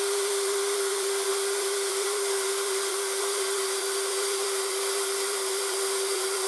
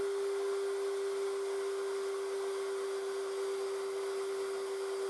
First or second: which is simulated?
first